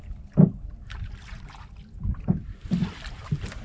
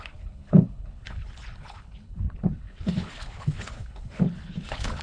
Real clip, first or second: first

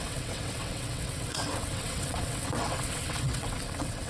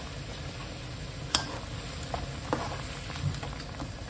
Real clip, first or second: second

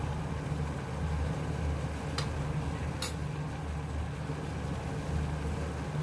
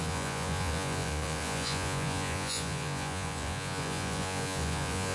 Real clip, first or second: first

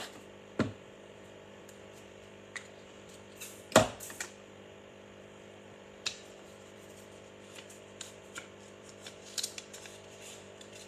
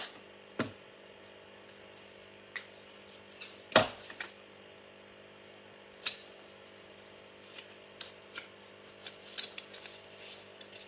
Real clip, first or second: second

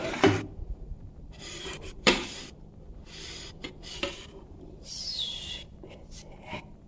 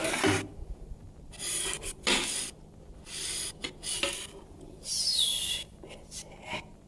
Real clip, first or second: second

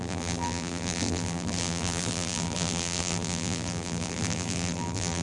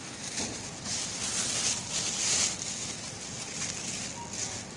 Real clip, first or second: second